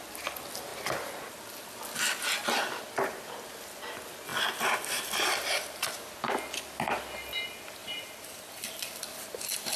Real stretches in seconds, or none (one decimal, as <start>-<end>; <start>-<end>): 0.0-4.3; 6.1-7.8; 8.8-9.8